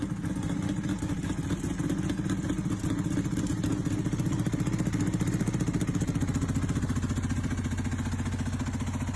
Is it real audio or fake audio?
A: real